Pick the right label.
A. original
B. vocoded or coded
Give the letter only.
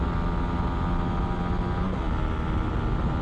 A